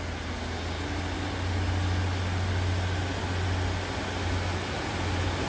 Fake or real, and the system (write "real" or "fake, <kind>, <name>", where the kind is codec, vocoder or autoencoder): real